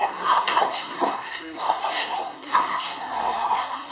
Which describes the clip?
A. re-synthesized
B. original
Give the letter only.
A